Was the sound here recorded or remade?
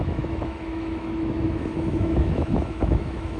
remade